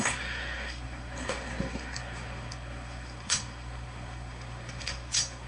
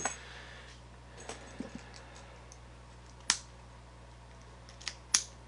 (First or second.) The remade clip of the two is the first